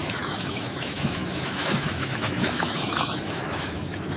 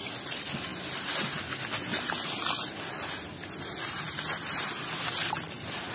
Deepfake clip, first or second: first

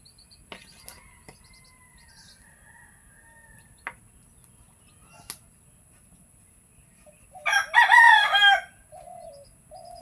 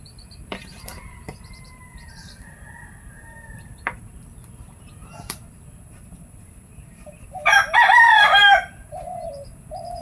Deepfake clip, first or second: second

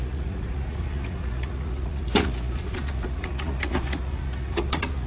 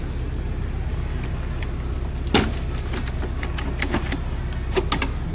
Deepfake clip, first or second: first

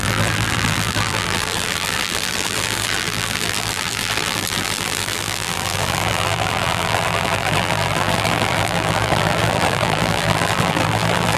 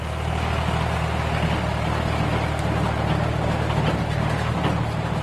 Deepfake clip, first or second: first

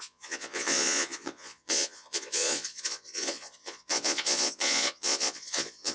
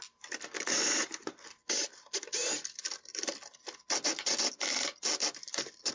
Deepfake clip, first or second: first